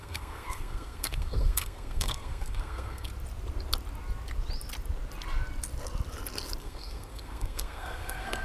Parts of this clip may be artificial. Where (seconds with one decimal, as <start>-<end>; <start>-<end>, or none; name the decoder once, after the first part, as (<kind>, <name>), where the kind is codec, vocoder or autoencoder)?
0.0-3.1 (codec, SNAC); 6.6-8.4